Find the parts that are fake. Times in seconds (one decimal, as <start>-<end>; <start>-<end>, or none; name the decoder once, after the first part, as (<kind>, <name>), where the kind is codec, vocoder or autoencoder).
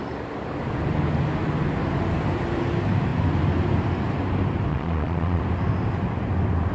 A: 4.7-5.4 (vocoder, Vocos)